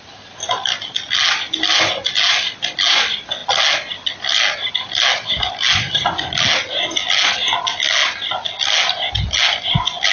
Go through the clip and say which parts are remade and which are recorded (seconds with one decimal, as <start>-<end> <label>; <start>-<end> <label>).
0.0-10.1 recorded